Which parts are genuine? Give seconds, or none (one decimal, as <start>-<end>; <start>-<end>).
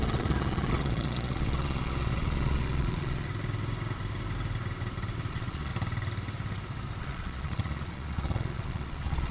3.3-5.3; 5.7-7.0